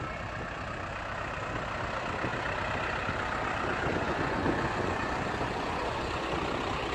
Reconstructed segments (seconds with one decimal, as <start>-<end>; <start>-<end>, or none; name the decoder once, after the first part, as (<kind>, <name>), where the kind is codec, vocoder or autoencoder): 3.7-6.3 (vocoder, Vocos)